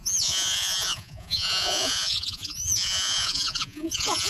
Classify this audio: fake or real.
fake